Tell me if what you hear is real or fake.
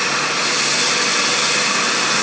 real